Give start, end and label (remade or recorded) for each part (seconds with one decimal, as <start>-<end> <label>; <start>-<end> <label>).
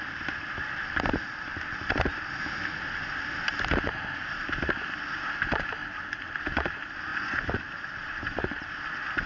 0.0-7.1 recorded; 7.1-7.6 remade; 7.6-9.3 recorded